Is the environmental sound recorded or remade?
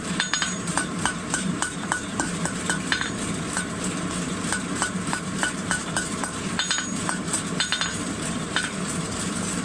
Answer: remade